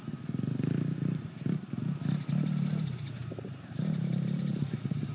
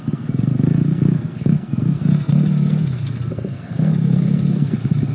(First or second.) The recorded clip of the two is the first